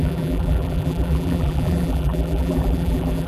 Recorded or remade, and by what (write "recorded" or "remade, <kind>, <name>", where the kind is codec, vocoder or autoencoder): remade, vocoder, BigVGAN v2